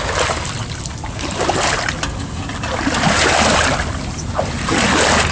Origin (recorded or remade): recorded